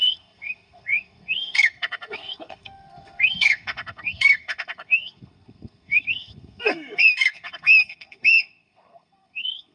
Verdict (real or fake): fake